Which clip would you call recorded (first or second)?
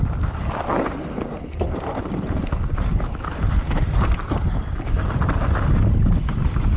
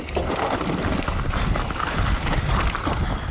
second